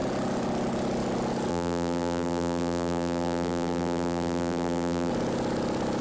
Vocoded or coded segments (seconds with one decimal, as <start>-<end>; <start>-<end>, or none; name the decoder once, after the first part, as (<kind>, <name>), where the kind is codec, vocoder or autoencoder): 1.5-5.1 (vocoder, BigVGAN v2)